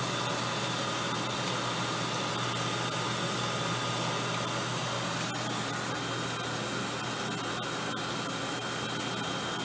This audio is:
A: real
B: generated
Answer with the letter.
A